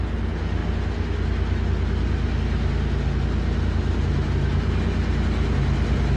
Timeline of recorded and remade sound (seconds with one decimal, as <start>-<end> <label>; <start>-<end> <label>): 0.0-6.2 recorded